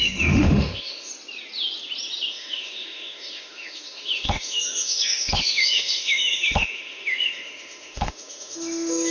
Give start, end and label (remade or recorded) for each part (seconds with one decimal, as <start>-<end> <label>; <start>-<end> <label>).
0.0-1.1 remade; 1.1-2.3 recorded; 2.3-9.1 remade